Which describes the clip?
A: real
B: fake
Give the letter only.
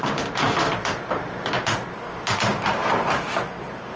A